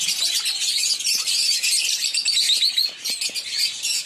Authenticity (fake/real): real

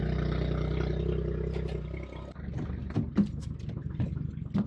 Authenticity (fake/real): real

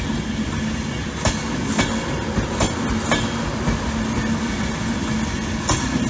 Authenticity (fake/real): real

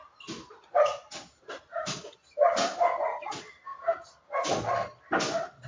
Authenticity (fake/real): real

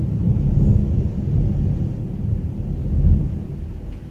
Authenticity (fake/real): real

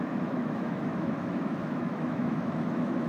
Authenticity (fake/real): fake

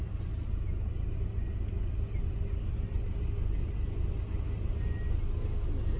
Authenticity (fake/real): real